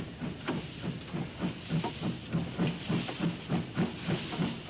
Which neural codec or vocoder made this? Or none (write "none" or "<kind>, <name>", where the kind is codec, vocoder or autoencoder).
none